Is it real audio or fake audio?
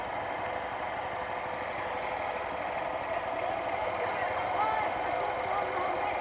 real